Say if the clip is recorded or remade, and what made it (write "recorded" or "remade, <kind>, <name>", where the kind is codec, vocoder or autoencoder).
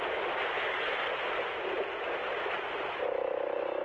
recorded